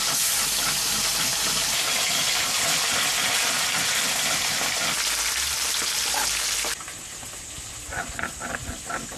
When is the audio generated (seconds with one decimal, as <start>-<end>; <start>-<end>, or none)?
1.3-2.0